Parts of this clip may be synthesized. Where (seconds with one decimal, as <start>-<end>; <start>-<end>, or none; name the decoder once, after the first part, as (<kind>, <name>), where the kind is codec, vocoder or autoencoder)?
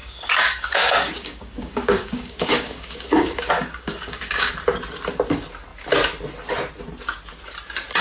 0.0-4.5 (codec, DAC)